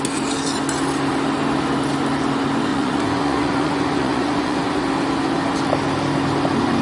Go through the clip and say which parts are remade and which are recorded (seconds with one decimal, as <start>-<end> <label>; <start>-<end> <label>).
0.0-2.7 recorded; 2.7-4.8 remade; 4.8-6.8 recorded